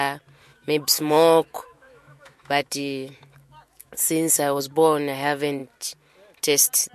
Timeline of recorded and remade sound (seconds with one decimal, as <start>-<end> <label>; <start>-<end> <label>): 0.0-0.5 recorded; 0.5-4.6 remade; 4.6-6.9 recorded